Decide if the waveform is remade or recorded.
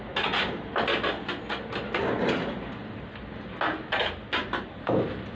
recorded